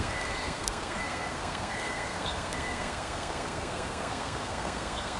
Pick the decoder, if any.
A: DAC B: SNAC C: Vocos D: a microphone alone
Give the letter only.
B